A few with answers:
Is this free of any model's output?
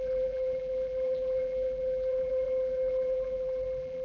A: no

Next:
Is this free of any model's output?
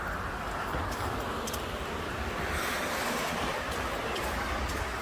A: no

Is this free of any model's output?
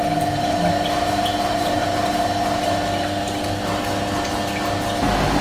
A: yes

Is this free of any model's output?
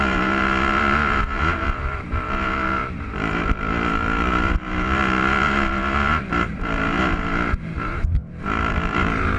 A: no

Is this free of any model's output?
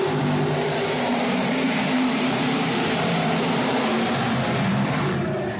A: no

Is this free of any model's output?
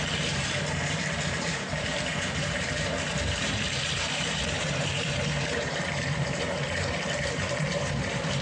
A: no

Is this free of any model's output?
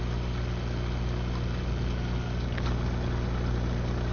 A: yes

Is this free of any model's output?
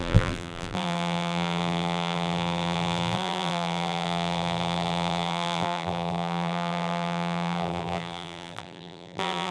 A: no